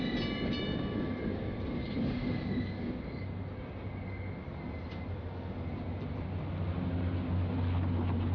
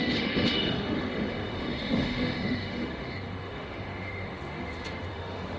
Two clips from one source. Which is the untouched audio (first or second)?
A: first